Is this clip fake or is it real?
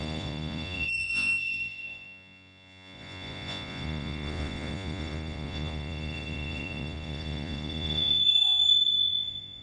fake